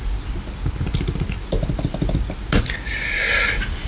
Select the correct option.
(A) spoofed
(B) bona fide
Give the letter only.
B